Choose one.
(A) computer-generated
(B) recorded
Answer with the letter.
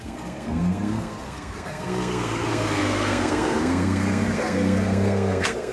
A